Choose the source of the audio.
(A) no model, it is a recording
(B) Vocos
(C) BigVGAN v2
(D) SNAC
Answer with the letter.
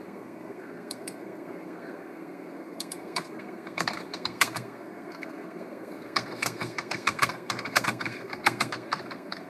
D